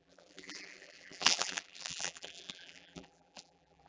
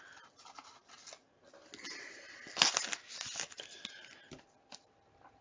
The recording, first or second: second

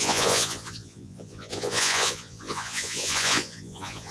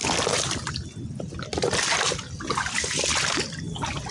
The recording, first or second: second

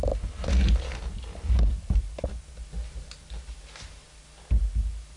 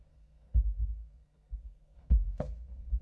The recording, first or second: first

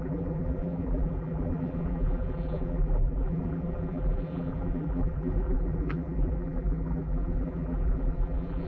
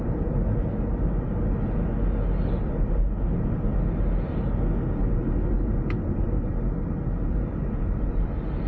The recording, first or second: second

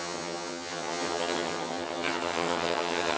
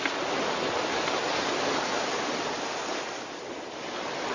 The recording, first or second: second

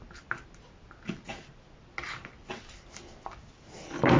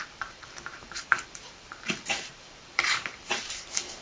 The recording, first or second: first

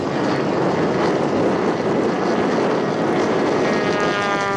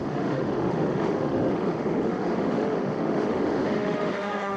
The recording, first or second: first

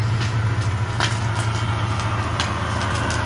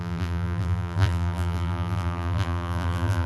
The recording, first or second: first